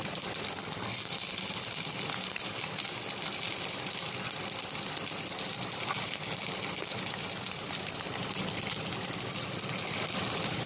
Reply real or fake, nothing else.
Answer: real